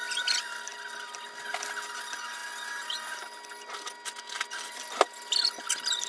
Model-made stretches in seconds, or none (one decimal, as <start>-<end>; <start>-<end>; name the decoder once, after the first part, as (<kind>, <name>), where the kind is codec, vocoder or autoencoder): none